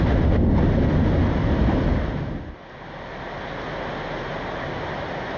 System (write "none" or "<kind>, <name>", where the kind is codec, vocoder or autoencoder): none